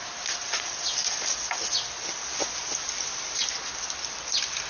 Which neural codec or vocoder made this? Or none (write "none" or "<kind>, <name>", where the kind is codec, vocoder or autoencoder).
none